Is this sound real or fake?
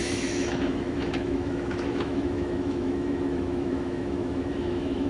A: fake